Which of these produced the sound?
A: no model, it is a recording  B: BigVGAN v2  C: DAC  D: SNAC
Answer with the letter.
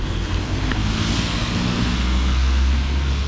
D